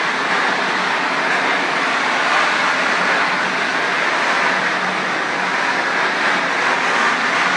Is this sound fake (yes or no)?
no